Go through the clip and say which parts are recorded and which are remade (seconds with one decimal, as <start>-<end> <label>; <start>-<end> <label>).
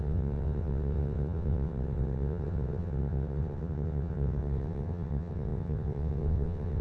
0.0-6.8 remade